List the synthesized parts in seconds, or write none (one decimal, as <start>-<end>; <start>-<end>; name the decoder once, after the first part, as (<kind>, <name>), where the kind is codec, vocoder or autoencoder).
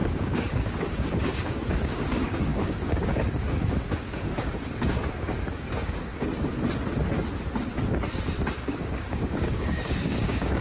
0.0-6.1 (codec, DAC); 8.6-10.6